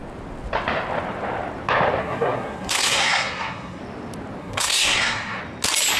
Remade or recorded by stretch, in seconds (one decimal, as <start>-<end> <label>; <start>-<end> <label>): 0.0-2.0 recorded; 2.0-3.8 remade; 3.8-4.4 recorded; 4.4-5.4 remade; 5.4-6.0 recorded

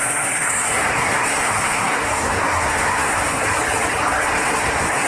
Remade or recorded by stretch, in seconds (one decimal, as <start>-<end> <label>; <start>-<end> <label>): 0.0-3.5 remade; 3.5-4.2 recorded; 4.2-5.1 remade

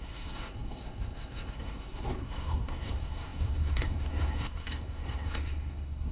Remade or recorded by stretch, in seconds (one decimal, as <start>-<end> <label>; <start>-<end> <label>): 0.0-6.1 remade

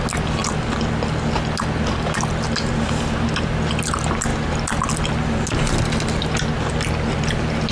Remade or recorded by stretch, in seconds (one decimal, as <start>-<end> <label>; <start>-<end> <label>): 0.0-7.7 recorded

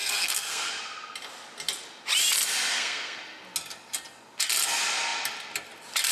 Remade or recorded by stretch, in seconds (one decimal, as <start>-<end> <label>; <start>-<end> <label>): 0.0-0.7 remade; 0.7-2.7 recorded; 2.7-3.2 remade; 3.2-6.1 recorded